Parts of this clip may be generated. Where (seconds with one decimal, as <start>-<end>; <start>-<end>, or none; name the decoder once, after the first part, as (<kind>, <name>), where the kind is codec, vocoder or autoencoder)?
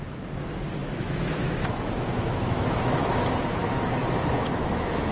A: 0.8-3.1 (autoencoder, DAC-VAE); 3.5-5.1